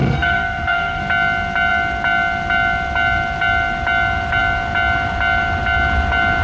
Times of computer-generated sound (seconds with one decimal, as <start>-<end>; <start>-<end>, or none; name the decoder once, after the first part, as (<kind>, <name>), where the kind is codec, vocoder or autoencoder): 0.0-1.0 (codec, SNAC)